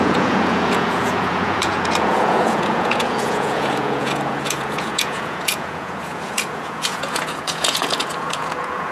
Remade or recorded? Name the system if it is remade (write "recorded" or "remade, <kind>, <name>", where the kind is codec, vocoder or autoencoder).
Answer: remade, vocoder, Vocos